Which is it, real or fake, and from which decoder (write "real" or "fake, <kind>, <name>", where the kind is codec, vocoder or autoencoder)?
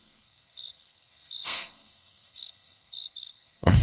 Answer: fake, codec, SNAC